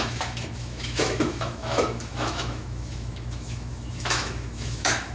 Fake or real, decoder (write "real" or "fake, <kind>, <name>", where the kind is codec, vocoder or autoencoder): fake, autoencoder, DAC-VAE